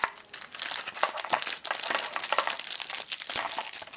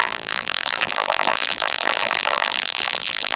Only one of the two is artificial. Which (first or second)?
second